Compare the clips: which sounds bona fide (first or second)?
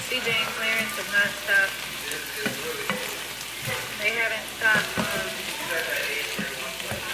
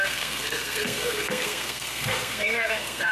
first